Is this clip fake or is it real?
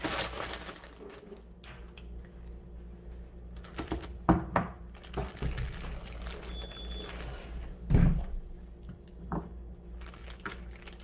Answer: real